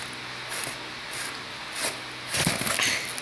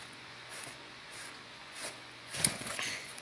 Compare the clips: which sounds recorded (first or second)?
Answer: first